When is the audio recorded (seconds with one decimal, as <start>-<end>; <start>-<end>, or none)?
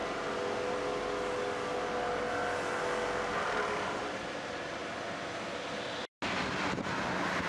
0.0-7.5